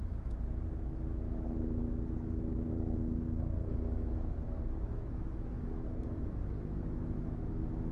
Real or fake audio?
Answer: fake